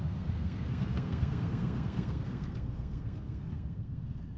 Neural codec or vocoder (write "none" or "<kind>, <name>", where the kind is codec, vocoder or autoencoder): codec, SNAC